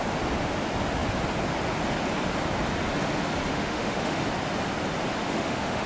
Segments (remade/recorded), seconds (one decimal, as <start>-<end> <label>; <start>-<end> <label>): 0.0-3.5 recorded; 3.5-4.2 remade; 4.2-5.2 recorded; 5.2-5.9 remade